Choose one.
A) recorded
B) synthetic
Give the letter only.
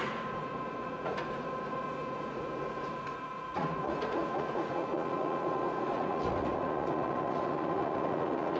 B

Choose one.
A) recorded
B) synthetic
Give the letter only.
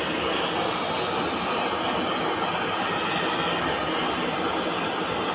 A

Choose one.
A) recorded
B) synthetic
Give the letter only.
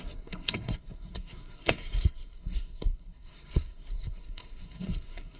B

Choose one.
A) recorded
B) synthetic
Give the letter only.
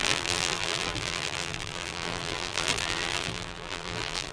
B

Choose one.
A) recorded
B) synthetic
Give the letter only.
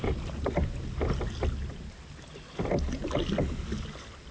A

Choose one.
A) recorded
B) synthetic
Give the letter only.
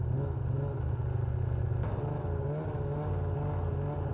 A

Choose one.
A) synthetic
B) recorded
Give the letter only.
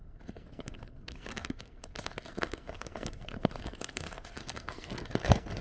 A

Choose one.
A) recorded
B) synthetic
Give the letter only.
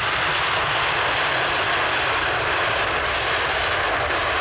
A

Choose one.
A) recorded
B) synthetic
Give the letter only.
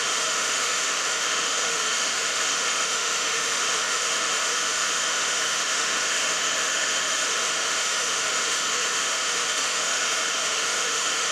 B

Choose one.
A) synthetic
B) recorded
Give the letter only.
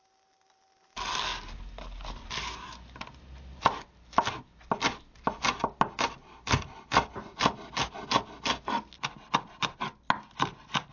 B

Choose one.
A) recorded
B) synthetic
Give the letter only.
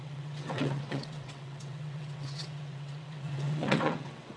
B